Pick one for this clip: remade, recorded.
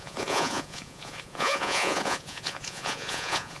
remade